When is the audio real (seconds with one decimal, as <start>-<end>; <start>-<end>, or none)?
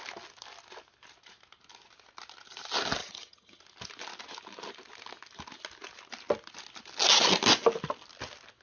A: 0.0-3.0; 3.6-8.6